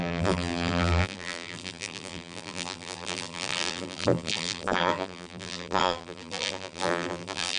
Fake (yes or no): yes